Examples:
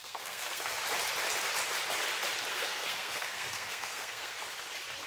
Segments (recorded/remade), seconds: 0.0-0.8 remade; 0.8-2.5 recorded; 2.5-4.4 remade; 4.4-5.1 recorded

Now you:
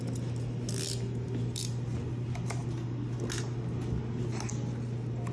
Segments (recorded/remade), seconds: 0.0-5.3 recorded

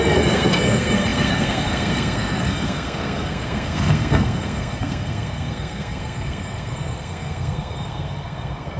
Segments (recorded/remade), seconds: 0.0-8.8 remade

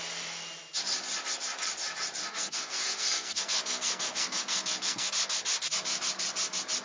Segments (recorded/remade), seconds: 0.0-2.2 recorded; 2.2-5.1 remade; 5.1-6.8 recorded

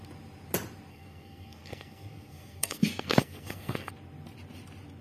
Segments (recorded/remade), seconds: 0.0-0.9 recorded; 0.9-3.9 remade; 3.9-5.0 recorded